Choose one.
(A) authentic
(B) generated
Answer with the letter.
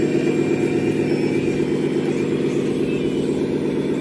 A